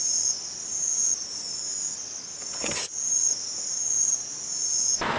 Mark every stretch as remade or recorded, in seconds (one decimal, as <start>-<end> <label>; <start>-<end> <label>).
0.0-5.2 recorded